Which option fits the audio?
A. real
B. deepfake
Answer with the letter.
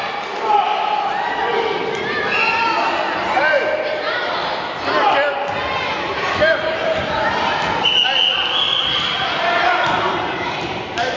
B